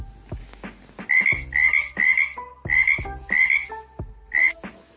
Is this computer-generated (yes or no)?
no